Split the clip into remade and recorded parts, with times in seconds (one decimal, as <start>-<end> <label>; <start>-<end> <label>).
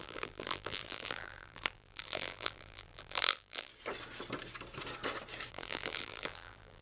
0.0-3.7 remade; 3.7-5.5 recorded; 5.5-6.8 remade